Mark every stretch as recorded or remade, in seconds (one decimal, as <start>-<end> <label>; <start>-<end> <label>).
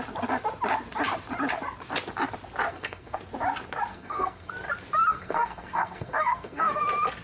0.0-2.7 recorded; 2.7-3.2 remade; 3.2-3.9 recorded; 3.9-4.5 remade; 4.5-5.1 recorded; 5.1-6.8 remade; 6.8-7.2 recorded